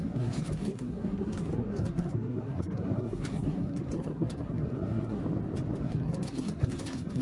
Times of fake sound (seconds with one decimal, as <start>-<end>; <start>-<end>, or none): 0.0-5.2; 5.8-7.2

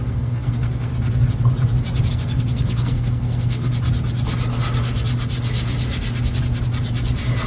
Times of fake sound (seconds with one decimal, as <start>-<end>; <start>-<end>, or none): 0.0-0.9; 2.1-3.7

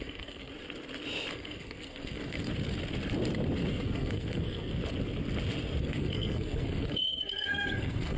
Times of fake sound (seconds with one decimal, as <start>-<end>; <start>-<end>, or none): 0.0-0.5; 1.3-2.5; 3.7-4.8; 5.8-8.2

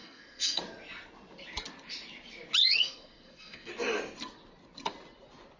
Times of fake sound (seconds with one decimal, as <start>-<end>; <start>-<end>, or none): 0.0-0.6; 2.6-3.7

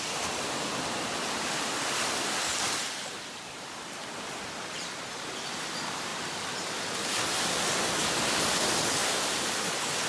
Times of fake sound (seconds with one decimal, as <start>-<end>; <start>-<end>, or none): none

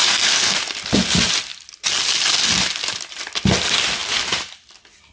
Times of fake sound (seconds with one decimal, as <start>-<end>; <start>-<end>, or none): 0.0-0.6

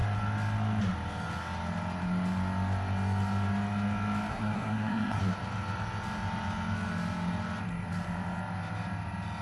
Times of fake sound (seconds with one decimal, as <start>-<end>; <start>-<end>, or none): 4.3-5.2

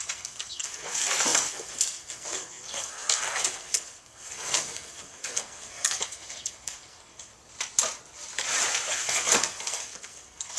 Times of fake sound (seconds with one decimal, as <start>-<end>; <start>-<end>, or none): 0.0-7.3; 8.9-10.6